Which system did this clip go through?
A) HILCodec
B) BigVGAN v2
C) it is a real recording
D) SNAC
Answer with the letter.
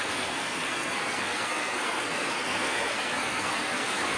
D